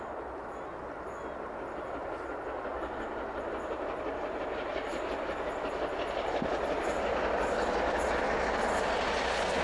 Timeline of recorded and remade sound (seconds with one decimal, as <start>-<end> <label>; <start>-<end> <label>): 0.0-9.6 recorded